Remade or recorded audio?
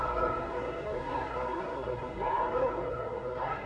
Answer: remade